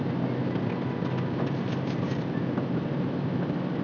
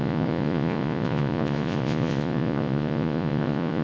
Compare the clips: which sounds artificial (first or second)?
second